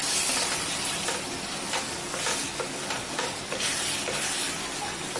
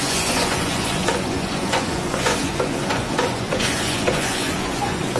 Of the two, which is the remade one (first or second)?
second